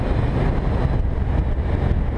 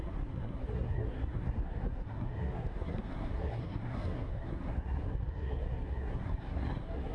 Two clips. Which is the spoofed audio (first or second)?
second